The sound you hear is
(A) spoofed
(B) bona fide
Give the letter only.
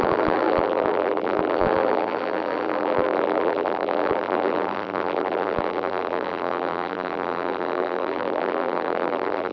A